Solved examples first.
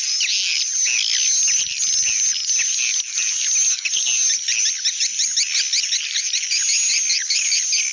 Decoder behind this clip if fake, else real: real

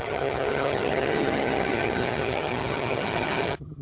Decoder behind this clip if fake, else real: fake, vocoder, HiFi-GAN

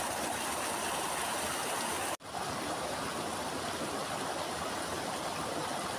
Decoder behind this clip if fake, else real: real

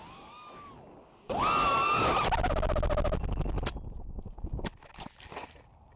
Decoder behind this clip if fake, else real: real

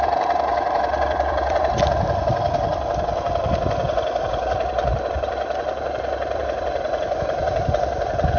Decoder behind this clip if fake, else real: fake, vocoder, BigVGAN v2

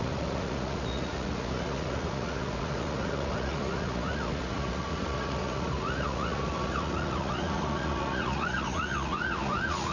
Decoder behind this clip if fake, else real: fake, vocoder, Vocos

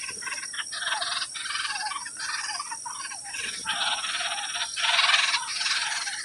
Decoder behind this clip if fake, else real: real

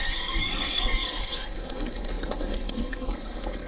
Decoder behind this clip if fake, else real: fake, codec, SNAC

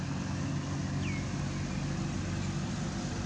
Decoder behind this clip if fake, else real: real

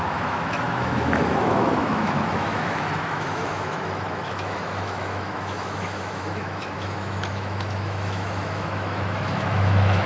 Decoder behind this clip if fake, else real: fake, autoencoder, DAC-VAE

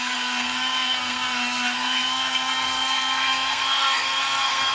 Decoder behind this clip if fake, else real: fake, codec, SNAC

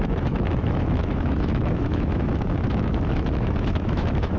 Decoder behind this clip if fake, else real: fake, autoencoder, DAC-VAE